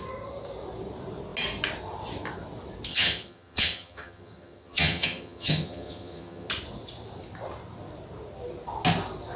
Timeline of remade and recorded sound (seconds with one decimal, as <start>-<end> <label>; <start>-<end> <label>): 0.0-2.9 recorded; 2.9-6.5 remade; 6.5-9.4 recorded